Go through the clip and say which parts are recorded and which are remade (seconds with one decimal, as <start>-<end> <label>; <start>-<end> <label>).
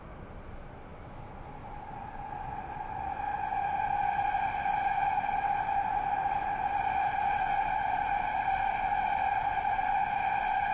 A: 0.0-10.7 recorded